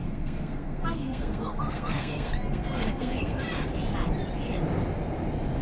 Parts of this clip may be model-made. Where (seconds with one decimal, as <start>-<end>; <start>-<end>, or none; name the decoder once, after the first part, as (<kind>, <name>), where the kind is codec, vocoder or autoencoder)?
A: 0.0-3.4 (codec, SNAC)